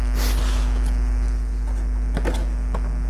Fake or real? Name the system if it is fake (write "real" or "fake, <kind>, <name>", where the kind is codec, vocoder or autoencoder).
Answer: real